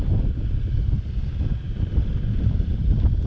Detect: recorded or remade recorded